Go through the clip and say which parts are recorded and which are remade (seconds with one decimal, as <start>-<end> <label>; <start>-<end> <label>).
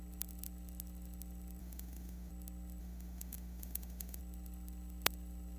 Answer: 0.0-1.6 recorded; 1.6-2.3 remade; 2.3-2.8 recorded; 2.8-4.2 remade; 4.2-5.6 recorded